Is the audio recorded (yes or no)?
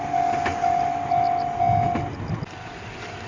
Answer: yes